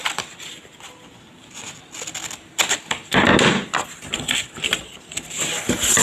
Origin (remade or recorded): recorded